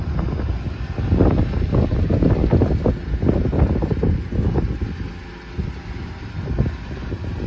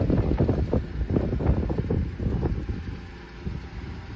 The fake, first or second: second